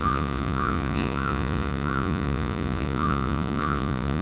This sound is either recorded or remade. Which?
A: remade